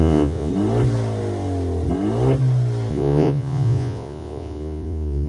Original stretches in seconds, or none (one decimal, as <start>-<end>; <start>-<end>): 0.5-2.9